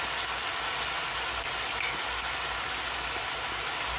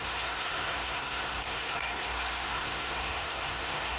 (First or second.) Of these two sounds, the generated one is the second